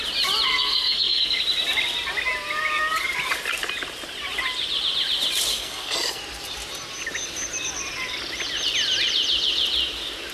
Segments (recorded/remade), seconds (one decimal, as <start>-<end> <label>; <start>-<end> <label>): 0.0-0.5 recorded; 0.5-1.4 remade; 1.4-5.5 recorded; 5.5-6.2 remade; 6.2-10.3 recorded